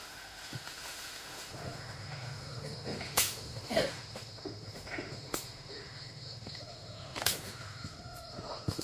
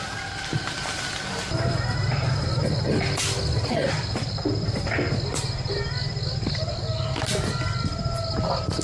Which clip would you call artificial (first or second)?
first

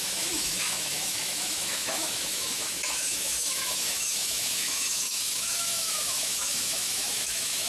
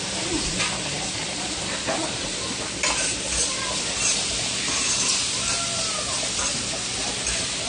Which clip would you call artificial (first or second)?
first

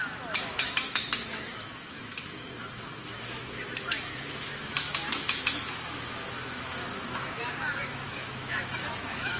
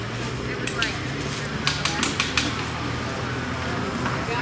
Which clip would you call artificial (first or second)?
first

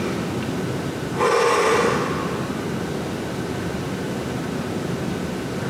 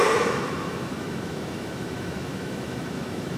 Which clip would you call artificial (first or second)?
second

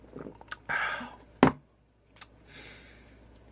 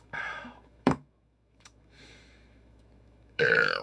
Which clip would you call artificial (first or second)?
second